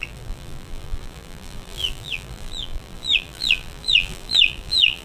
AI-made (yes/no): yes